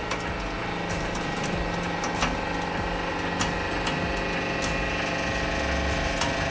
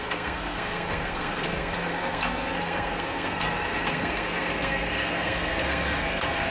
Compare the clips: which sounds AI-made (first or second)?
second